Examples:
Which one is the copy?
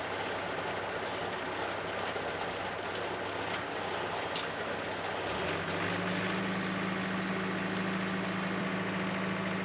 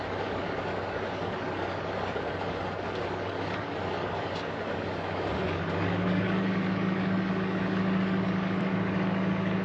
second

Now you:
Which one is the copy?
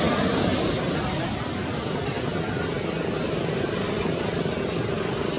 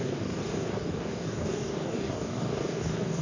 second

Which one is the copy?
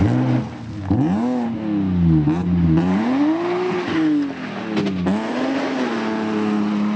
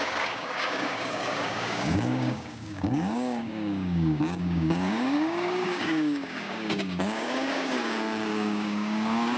second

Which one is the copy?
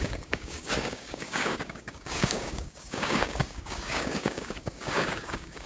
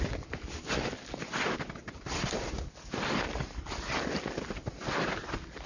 first